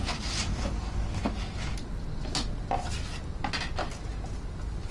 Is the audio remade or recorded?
recorded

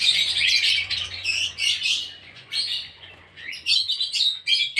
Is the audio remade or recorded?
remade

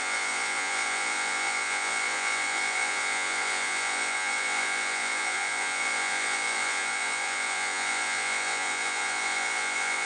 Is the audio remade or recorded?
remade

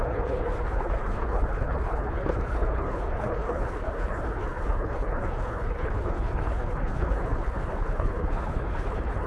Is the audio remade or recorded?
remade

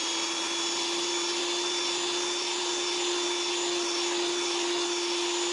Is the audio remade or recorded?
recorded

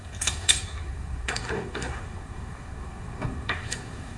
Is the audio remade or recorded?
remade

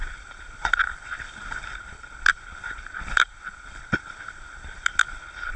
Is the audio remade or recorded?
remade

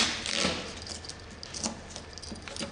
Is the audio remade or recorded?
recorded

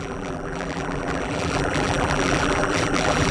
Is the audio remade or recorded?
remade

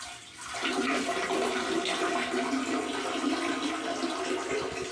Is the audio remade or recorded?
recorded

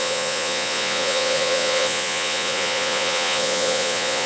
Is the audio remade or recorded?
remade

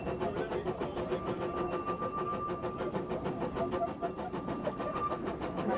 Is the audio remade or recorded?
recorded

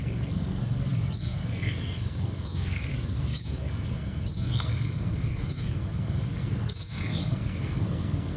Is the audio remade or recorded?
remade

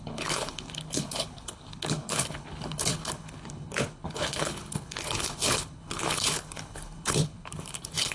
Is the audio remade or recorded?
remade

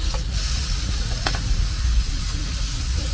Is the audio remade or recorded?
remade